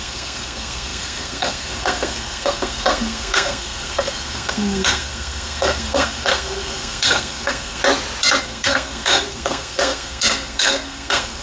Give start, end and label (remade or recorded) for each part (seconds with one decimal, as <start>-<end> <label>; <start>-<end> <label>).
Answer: 0.0-7.8 remade; 7.8-8.4 recorded; 8.4-11.4 remade